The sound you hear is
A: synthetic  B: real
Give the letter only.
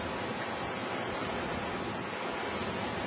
B